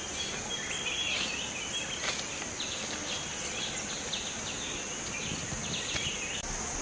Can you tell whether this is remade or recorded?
recorded